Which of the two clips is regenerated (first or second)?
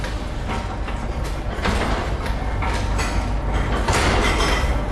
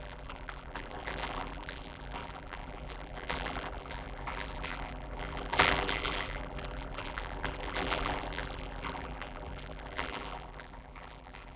second